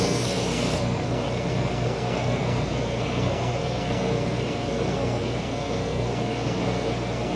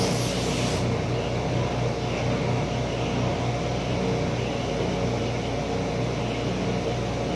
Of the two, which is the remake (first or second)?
first